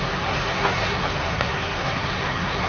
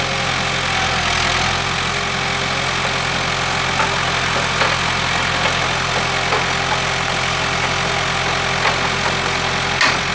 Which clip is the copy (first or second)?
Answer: first